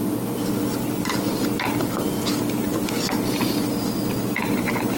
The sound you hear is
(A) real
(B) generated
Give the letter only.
A